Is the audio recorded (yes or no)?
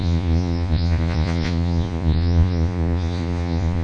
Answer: no